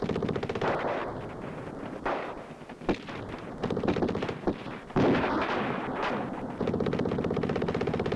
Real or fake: real